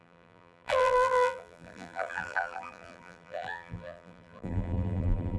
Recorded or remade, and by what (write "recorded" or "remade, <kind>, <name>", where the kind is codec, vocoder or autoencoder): remade, vocoder, BigVGAN v2